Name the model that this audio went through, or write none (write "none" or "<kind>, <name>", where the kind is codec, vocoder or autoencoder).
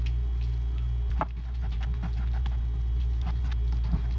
none